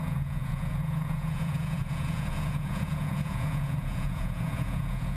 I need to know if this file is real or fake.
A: fake